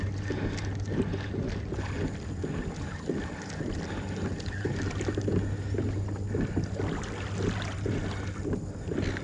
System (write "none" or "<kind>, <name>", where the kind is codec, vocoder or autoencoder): none